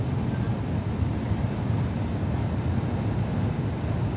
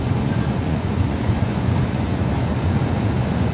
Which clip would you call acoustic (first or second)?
first